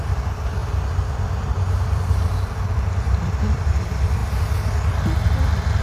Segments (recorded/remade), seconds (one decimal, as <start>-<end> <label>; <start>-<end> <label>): 0.0-4.2 remade; 4.2-4.9 recorded; 4.9-5.8 remade